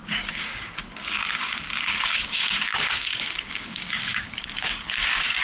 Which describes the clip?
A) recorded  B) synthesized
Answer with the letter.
B